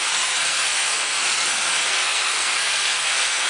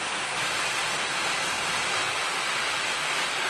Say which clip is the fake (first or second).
first